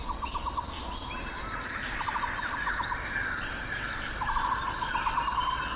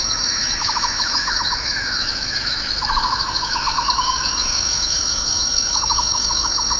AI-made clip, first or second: second